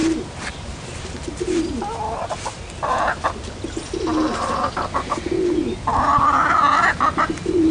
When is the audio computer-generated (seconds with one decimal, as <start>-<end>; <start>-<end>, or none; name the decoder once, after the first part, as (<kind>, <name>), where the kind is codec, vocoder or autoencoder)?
none